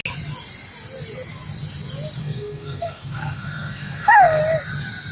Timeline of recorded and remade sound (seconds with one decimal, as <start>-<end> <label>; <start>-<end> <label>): 0.0-2.2 recorded; 2.2-4.4 remade; 4.4-5.1 recorded